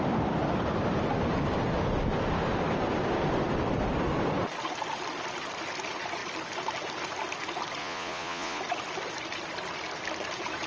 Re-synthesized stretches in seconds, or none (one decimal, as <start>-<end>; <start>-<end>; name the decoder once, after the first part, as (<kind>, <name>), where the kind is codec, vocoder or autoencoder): 7.8-8.6 (vocoder, Vocos)